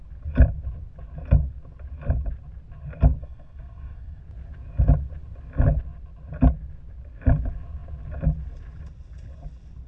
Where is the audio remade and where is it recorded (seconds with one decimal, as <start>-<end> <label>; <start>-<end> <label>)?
0.0-3.2 recorded; 3.2-4.2 remade; 4.2-9.9 recorded